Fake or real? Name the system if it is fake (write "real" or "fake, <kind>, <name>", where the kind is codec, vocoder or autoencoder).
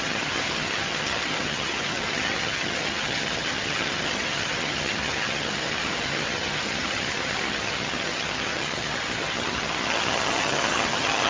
fake, vocoder, HiFi-GAN